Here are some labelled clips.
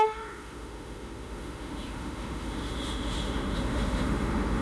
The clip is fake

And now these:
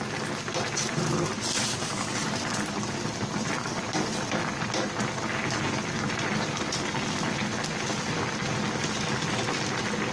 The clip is real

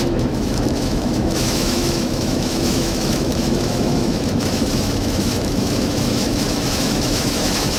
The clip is fake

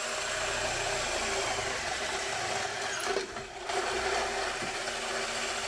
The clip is real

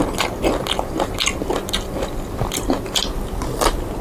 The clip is real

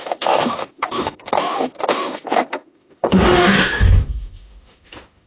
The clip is fake